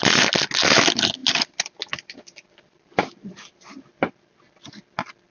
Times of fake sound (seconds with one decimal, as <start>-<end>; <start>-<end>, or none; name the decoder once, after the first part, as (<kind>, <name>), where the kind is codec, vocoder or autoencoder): 1.2-4.1 (vocoder, BigVGAN v2)